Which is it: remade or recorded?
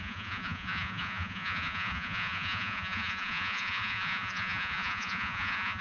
remade